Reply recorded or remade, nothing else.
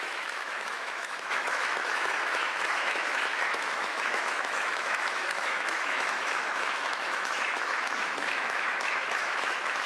remade